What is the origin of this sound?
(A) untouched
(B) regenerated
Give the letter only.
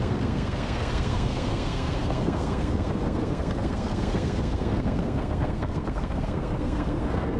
B